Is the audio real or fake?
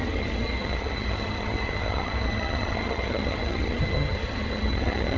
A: fake